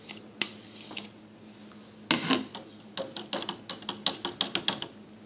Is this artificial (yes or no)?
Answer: no